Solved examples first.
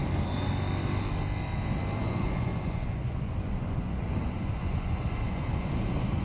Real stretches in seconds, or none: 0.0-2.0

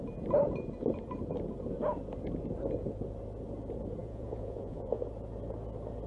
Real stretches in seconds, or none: 0.0-4.0; 5.0-6.1

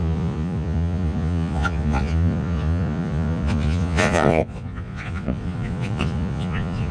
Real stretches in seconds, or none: none

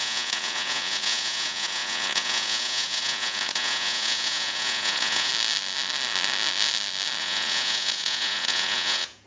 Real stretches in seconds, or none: 5.3-7.2

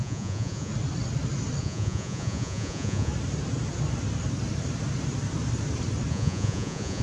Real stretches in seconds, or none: 0.7-1.6; 3.1-6.1